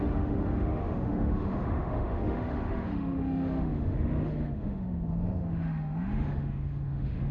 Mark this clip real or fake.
fake